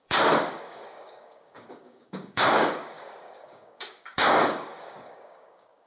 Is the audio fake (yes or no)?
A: yes